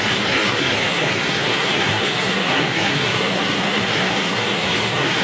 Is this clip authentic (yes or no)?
no